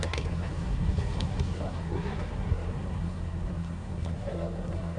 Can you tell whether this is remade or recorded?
remade